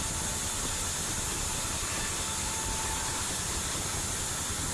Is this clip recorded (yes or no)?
yes